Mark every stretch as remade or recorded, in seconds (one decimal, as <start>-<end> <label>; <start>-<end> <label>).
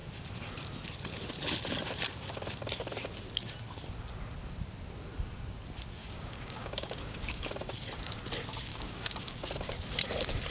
0.0-6.0 recorded; 6.0-7.5 remade; 7.5-8.7 recorded; 8.7-9.4 remade; 9.4-10.5 recorded